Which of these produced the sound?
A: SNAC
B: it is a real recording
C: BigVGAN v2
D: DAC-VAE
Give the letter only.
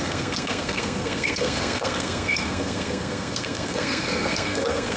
A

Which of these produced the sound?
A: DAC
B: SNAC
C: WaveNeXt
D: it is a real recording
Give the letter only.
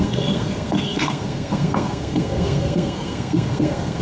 B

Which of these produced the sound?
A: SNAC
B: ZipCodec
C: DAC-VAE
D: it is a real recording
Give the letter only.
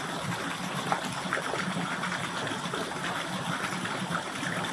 D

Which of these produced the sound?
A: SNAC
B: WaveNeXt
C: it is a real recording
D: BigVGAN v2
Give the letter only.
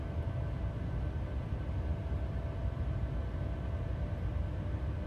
C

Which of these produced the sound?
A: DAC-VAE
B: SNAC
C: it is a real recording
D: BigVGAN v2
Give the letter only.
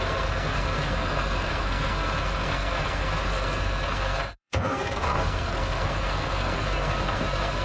B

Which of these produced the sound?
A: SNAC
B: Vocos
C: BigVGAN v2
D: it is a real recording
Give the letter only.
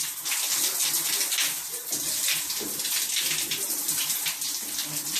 D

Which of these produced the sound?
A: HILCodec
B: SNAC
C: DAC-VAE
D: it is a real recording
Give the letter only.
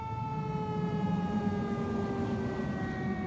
D